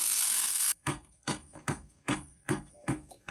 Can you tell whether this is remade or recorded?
remade